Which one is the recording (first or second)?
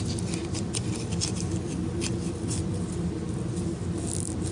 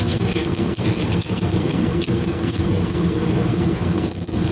first